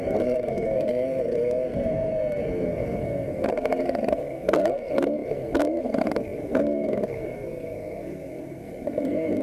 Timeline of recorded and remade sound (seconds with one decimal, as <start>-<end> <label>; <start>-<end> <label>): 0.0-9.4 remade